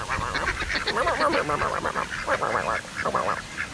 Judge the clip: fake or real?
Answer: real